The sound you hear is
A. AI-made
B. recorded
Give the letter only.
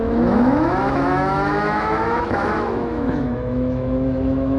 A